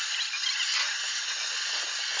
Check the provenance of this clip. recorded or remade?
recorded